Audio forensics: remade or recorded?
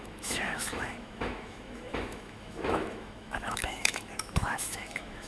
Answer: remade